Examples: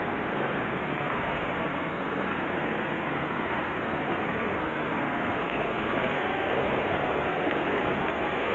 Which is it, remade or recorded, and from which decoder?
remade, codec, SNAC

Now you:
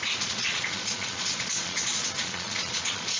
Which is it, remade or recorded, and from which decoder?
remade, vocoder, Vocos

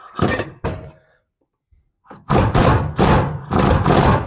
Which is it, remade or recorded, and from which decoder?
recorded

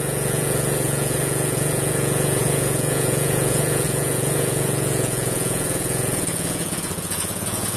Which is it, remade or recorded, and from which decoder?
remade, vocoder, Vocos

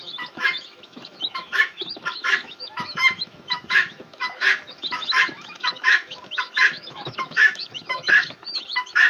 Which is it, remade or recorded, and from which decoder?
remade, autoencoder, DAC-VAE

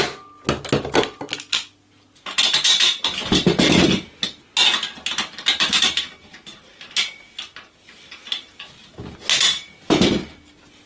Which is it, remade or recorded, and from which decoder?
recorded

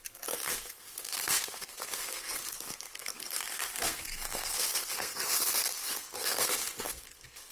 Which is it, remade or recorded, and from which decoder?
remade, codec, SNAC